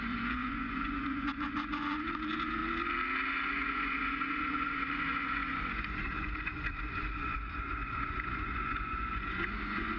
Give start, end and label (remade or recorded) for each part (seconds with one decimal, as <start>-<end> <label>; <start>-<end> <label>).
0.0-2.6 remade; 2.6-3.3 recorded; 3.3-10.0 remade